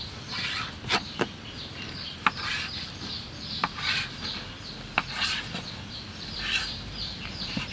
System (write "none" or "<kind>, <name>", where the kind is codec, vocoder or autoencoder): vocoder, BigVGAN v2